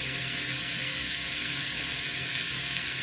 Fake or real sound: fake